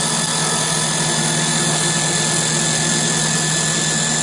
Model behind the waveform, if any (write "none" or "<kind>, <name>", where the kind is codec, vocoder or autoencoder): none